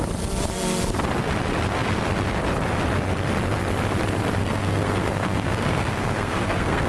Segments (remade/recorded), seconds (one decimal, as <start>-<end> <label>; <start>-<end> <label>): 0.0-4.4 recorded; 4.4-6.9 remade